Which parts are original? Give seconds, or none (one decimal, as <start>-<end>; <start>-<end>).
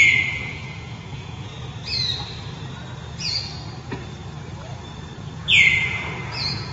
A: 1.5-5.2